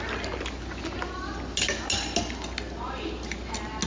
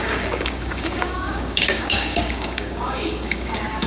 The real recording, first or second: first